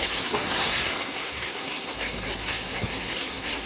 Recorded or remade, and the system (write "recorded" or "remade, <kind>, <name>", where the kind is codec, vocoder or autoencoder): remade, codec, SNAC